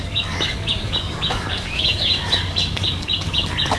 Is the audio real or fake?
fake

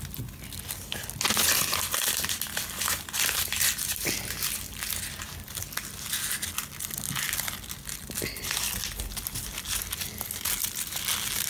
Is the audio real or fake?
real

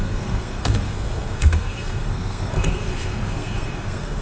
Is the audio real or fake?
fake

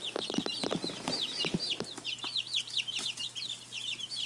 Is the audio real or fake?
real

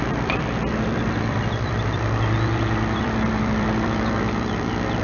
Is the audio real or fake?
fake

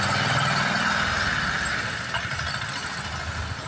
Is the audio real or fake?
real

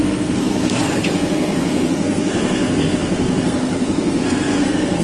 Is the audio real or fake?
fake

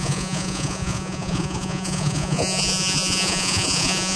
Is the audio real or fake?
fake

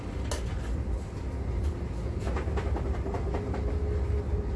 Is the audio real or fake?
real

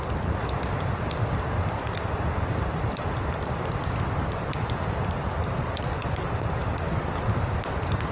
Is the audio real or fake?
fake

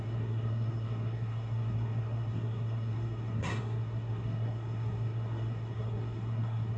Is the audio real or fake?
fake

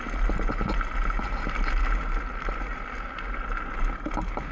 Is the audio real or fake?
real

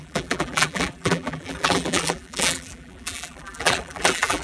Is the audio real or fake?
fake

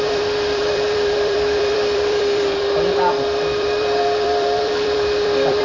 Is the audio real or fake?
fake